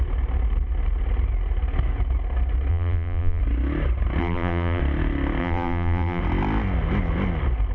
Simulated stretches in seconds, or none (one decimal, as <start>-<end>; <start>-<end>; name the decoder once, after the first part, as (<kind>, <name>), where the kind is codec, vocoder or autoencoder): 2.7-3.4 (vocoder, BigVGAN v2); 4.2-4.8; 5.4-6.2